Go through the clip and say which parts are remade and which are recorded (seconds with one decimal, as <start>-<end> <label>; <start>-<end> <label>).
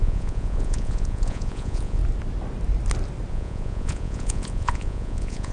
0.0-2.0 remade; 2.0-3.3 recorded; 3.3-5.5 remade